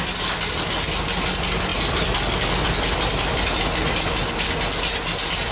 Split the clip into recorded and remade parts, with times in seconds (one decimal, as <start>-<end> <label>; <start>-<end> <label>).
0.0-5.5 recorded